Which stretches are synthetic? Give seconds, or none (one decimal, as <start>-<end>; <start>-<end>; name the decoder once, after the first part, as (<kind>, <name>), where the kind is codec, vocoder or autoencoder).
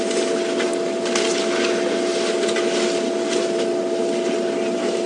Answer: none